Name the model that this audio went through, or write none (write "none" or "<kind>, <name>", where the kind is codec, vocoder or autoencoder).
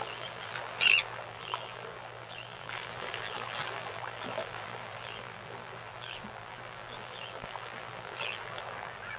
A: vocoder, BigVGAN v2